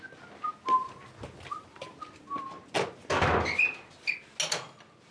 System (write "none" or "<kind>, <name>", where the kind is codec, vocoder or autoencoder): none